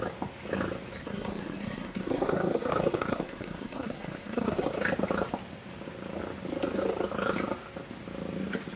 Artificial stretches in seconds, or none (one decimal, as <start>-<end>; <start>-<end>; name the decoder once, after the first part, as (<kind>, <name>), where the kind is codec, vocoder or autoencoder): 1.0-4.7 (codec, SNAC)